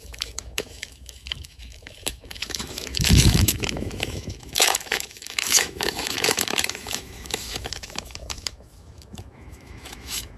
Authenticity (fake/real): fake